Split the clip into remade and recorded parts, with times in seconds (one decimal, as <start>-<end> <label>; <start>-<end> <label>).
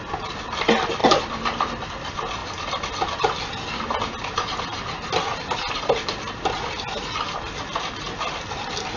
0.0-9.0 recorded